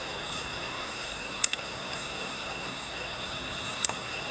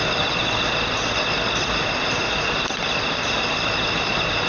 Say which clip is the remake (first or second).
first